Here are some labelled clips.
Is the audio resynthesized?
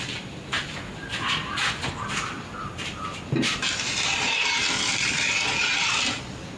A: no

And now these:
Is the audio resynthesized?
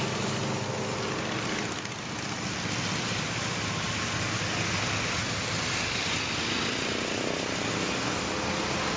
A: no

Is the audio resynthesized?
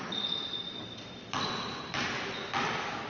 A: no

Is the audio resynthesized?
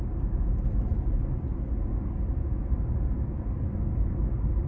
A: no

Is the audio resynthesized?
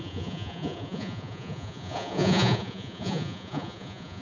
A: yes